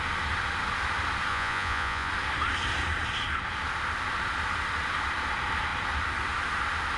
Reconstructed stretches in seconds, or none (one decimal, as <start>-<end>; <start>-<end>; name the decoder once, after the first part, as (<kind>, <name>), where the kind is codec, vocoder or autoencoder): 1.3-2.1 (vocoder, Vocos)